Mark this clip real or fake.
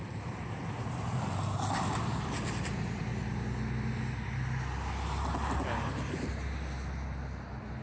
real